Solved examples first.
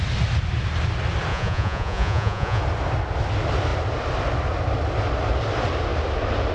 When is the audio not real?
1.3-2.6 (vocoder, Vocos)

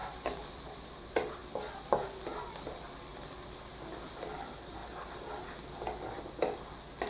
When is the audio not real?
0.0-1.4 (vocoder, BigVGAN v2); 2.7-3.1